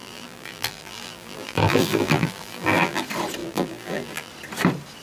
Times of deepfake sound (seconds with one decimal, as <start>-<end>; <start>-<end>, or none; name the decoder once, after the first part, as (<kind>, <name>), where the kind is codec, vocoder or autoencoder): 0.0-3.0 (vocoder, BigVGAN v2); 3.4-4.3